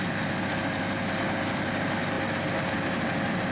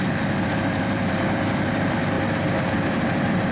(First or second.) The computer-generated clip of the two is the second